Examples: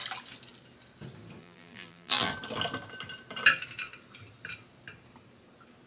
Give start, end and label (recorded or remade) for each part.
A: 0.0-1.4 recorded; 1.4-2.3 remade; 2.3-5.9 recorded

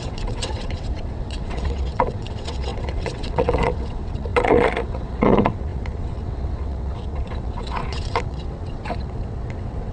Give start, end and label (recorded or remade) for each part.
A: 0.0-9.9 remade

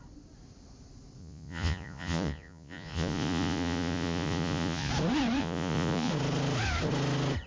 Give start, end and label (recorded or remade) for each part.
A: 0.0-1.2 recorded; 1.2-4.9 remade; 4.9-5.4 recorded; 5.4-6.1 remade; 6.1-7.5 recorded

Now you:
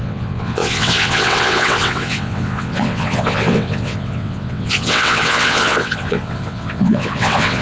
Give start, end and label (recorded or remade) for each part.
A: 0.0-7.6 remade

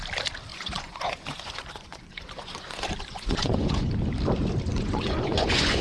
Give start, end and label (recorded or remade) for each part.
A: 0.0-0.5 recorded; 0.5-3.9 remade; 3.9-4.7 recorded; 4.7-5.8 remade

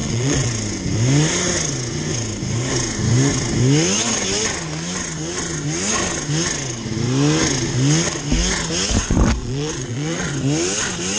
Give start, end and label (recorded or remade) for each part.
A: 0.0-0.5 remade; 0.5-9.4 recorded; 9.4-10.3 remade; 10.3-11.2 recorded

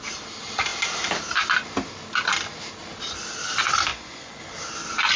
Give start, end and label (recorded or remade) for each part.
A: 0.0-3.9 recorded; 3.9-4.4 remade; 4.4-5.2 recorded